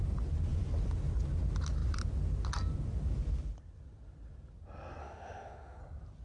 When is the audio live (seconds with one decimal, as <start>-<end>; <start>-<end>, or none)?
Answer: 0.0-5.0; 5.8-6.2